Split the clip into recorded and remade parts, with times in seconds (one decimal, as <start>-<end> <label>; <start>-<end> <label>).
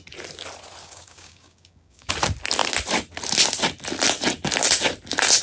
0.0-0.8 recorded; 0.8-2.1 remade; 2.1-5.4 recorded